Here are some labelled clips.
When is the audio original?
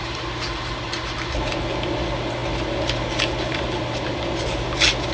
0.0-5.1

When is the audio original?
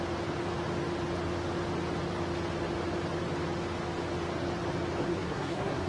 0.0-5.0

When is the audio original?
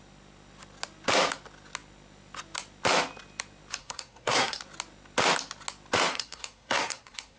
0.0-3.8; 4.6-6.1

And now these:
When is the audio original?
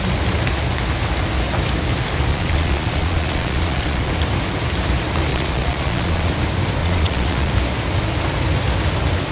0.0-2.3; 4.1-5.3; 6.3-6.8; 7.5-9.3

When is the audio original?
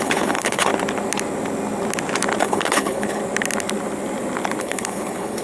0.7-2.4; 3.2-4.6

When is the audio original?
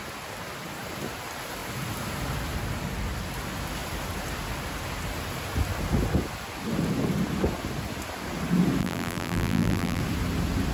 0.0-8.8; 10.0-10.7